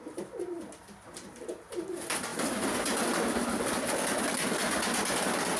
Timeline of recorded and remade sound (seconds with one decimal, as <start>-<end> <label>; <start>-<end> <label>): 0.0-5.6 recorded